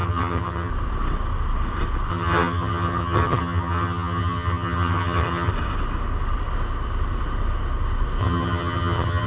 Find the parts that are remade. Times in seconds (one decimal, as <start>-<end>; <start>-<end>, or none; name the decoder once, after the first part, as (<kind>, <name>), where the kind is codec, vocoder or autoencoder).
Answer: 0.0-0.7 (vocoder, HiFi-GAN); 2.1-5.5; 8.2-9.3